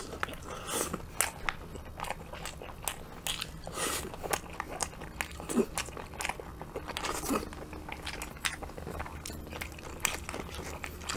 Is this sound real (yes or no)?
yes